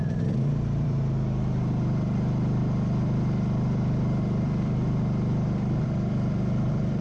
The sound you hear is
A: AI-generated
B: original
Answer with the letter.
A